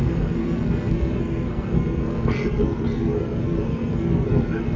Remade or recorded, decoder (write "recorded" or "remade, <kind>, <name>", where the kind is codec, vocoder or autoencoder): remade, codec, SNAC